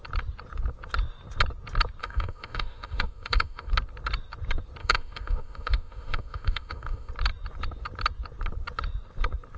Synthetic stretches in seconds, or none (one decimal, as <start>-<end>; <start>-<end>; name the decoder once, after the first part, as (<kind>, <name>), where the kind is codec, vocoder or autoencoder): 2.0-3.7 (autoencoder, DAC-VAE); 4.8-7.1